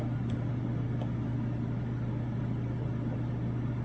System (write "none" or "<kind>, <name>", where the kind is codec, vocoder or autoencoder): none